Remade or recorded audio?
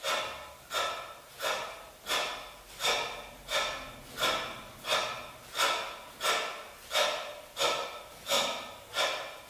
recorded